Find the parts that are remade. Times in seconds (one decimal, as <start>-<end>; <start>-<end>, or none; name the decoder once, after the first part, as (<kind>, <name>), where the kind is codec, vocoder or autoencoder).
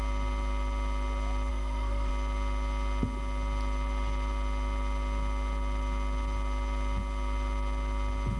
1.5-2.1 (codec, SNAC)